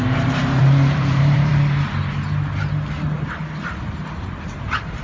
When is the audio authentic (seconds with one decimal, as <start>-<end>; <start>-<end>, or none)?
1.5-3.8